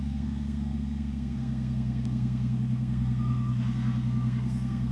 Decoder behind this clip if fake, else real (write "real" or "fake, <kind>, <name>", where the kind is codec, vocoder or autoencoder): fake, codec, SNAC